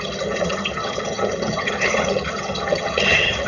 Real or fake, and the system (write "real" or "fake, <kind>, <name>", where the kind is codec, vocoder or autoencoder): fake, vocoder, HiFi-GAN